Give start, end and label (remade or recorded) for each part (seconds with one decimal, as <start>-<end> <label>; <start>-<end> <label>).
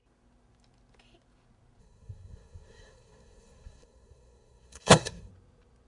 0.0-1.8 recorded; 1.8-5.3 remade; 5.3-5.9 recorded